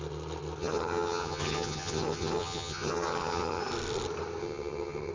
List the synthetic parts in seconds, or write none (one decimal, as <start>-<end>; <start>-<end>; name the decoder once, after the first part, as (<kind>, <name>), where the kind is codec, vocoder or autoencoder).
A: 0.6-3.6 (vocoder, HiFi-GAN); 4.4-5.1